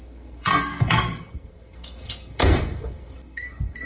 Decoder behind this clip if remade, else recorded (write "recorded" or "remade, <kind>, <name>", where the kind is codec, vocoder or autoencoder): remade, codec, SNAC